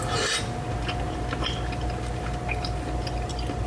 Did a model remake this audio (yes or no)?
no